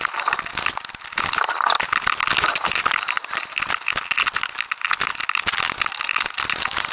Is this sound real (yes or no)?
yes